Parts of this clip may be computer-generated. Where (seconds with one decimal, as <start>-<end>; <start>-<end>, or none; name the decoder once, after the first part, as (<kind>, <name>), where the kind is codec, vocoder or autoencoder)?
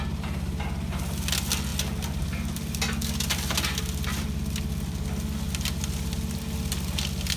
none